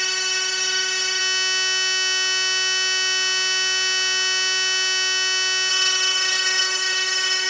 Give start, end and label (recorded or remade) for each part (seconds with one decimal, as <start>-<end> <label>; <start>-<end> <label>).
0.0-1.2 remade; 1.2-5.7 recorded; 5.7-7.5 remade